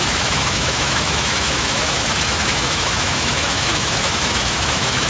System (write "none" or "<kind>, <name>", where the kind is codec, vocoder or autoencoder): autoencoder, DAC-VAE